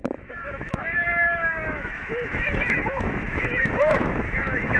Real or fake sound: fake